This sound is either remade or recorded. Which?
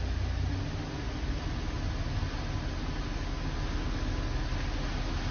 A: recorded